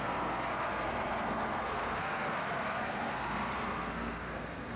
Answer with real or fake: fake